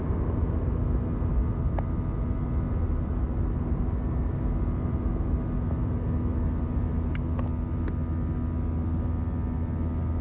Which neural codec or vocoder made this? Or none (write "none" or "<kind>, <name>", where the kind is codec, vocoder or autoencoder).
none